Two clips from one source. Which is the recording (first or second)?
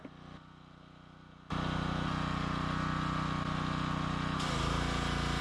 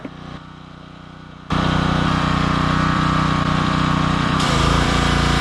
first